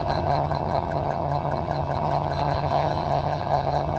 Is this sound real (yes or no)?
no